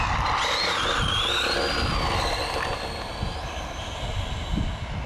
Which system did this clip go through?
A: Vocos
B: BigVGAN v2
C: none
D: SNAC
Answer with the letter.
C